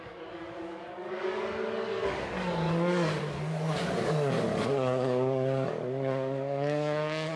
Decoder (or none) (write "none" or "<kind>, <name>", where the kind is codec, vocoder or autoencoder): codec, DAC